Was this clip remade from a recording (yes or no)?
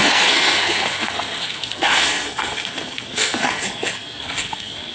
yes